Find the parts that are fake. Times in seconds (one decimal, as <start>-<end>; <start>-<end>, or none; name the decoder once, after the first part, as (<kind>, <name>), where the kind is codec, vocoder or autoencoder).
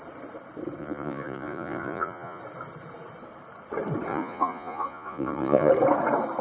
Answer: 0.8-2.4 (vocoder, Vocos); 4.1-5.7